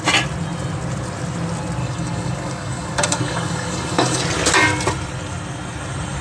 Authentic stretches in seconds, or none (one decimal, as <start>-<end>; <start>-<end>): 0.0-1.8; 4.2-6.2